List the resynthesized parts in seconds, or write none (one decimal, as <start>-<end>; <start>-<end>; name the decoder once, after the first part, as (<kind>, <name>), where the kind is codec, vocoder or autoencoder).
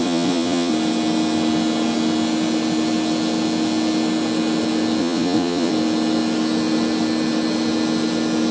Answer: 0.0-0.7 (vocoder, Vocos); 5.0-5.7